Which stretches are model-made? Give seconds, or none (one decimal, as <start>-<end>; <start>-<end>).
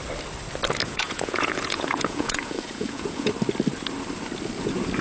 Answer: 0.8-3.3